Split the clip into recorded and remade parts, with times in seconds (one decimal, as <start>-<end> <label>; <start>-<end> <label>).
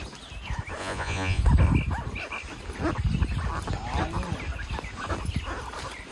0.0-0.8 recorded; 0.8-1.4 remade; 1.4-6.1 recorded